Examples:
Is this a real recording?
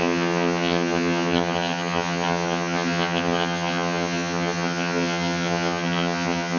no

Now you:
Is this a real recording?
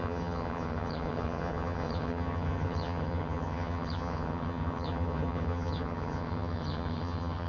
no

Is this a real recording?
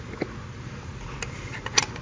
yes